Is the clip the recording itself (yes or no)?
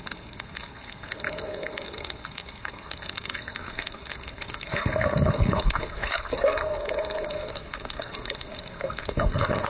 no